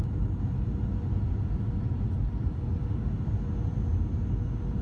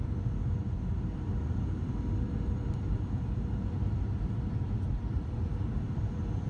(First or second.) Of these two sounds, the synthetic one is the second